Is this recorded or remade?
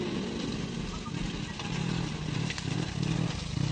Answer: recorded